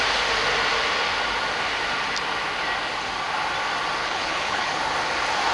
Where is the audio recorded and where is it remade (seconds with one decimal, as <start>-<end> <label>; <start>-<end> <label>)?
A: 0.0-4.0 recorded; 4.0-4.8 remade; 4.8-5.5 recorded